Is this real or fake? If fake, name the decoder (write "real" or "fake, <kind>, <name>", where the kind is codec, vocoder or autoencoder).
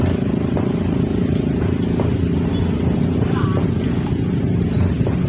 real